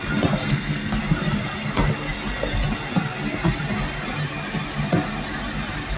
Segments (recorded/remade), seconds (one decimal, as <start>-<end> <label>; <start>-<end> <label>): 0.0-0.5 recorded; 0.5-1.0 remade; 1.0-6.0 recorded